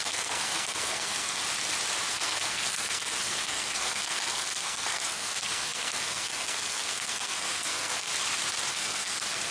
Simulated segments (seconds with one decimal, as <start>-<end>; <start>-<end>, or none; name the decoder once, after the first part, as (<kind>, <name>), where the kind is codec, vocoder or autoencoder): 0.0-1.4 (codec, SNAC); 2.1-8.1; 8.7-9.5